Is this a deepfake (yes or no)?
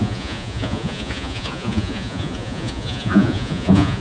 yes